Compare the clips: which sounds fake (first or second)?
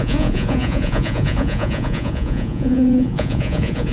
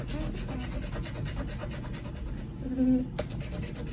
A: first